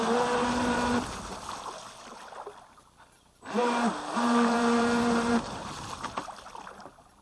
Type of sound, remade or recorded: recorded